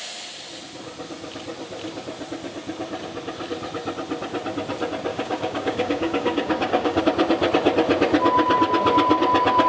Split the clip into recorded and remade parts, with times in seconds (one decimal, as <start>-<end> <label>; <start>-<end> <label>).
0.0-5.1 recorded; 5.1-7.0 remade; 7.0-9.7 recorded